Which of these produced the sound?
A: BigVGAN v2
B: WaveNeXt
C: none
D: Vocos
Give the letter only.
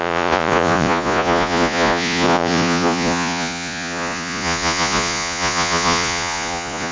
D